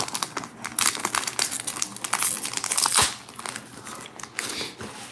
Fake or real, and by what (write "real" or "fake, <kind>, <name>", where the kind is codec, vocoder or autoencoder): real